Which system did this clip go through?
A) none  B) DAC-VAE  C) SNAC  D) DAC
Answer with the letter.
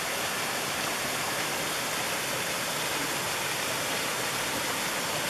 A